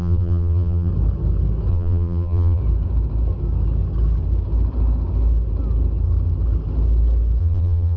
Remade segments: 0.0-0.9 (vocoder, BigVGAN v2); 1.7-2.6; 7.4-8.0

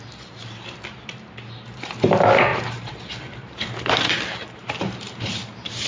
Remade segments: 2.5-5.3 (vocoder, BigVGAN v2)

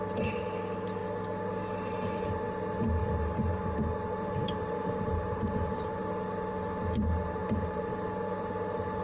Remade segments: 3.0-6.0 (vocoder, BigVGAN v2); 7.4-9.0

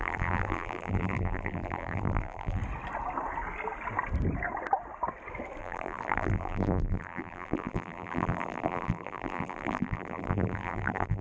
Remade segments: 0.0-2.6 (vocoder, BigVGAN v2); 5.6-11.2